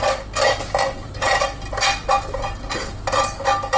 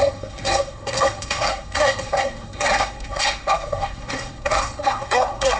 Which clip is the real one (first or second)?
first